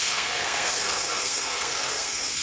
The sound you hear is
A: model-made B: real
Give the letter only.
A